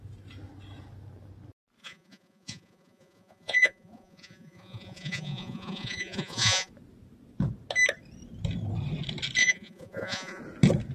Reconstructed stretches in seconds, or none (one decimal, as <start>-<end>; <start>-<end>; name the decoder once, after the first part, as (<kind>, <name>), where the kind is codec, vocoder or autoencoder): 1.8-6.7 (vocoder, Vocos); 9.4-10.4